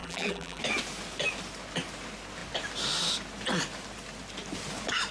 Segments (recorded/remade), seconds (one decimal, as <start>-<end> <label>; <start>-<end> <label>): 0.0-0.6 remade; 0.6-5.1 recorded